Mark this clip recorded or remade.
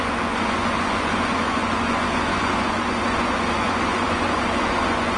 remade